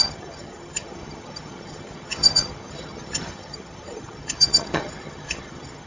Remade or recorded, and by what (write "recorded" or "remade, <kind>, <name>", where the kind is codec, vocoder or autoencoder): remade, vocoder, HiFi-GAN